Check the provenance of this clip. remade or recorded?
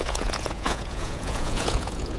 remade